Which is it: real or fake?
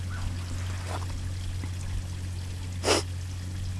real